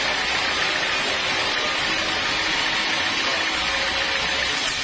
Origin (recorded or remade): recorded